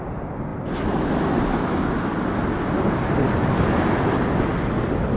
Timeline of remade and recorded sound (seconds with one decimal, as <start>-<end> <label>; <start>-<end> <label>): 0.0-5.2 recorded